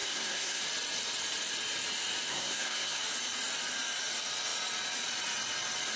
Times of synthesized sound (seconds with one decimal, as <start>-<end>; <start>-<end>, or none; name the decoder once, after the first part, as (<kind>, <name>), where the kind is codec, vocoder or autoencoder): 0.0-0.6 (codec, SNAC); 2.3-3.0